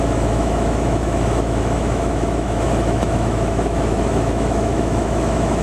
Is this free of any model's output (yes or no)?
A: no